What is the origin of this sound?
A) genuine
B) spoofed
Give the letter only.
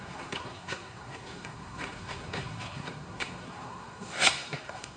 B